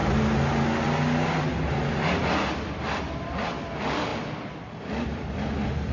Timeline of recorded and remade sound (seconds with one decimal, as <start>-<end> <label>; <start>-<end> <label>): 0.0-4.1 recorded; 4.1-5.3 remade; 5.3-5.9 recorded